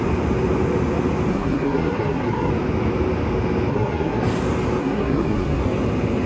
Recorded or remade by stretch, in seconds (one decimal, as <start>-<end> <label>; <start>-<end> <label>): 0.0-1.3 recorded; 1.3-2.5 remade; 2.5-3.7 recorded; 3.7-4.2 remade; 4.2-4.8 recorded; 4.8-5.6 remade; 5.6-6.3 recorded